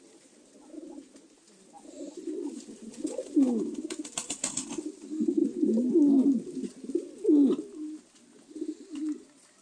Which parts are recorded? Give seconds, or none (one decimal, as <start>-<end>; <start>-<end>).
0.0-9.6